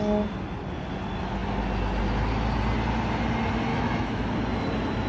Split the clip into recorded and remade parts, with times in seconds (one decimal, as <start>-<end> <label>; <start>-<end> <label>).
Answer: 0.0-3.7 recorded; 3.7-4.3 remade; 4.3-5.1 recorded